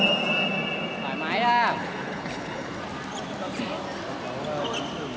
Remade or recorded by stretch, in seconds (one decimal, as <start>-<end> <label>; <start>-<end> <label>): 0.0-1.8 recorded; 1.8-2.8 remade; 2.8-5.2 recorded